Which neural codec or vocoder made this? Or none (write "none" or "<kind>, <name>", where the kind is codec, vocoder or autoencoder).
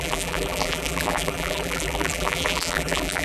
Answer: vocoder, BigVGAN v2